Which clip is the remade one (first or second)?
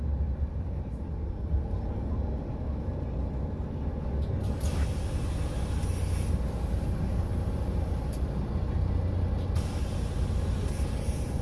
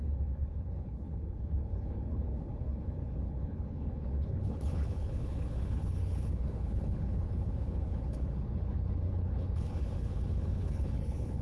second